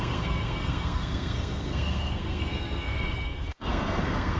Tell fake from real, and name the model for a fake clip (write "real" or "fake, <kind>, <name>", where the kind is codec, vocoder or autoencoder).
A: fake, codec, SNAC